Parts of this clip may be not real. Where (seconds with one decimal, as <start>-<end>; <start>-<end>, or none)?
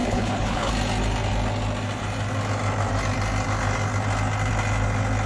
0.0-0.7